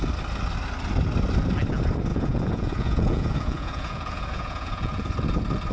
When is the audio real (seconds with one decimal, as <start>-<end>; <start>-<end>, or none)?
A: 0.0-2.1; 5.1-5.7